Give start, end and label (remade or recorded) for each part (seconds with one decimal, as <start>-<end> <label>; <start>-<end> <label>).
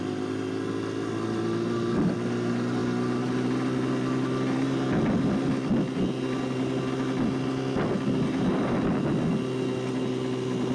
0.0-10.7 recorded